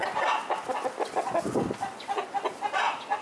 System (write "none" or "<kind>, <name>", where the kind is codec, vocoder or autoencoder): none